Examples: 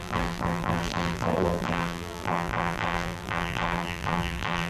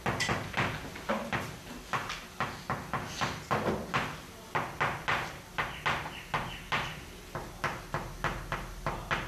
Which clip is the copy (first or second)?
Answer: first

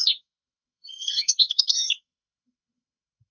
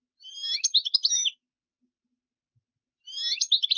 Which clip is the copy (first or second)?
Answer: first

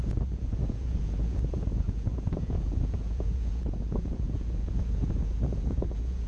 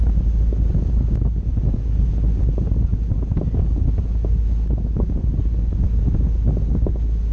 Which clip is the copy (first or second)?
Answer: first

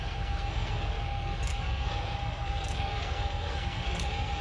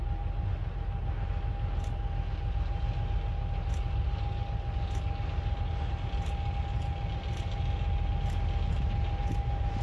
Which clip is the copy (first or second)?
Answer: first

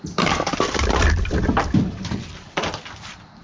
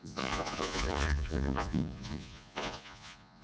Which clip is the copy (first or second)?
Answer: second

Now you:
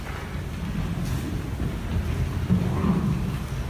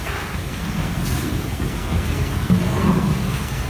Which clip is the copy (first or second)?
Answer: second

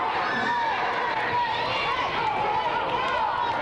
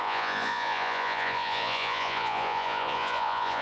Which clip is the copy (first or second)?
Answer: second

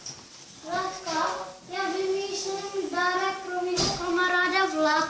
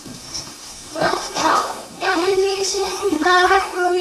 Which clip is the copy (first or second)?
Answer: second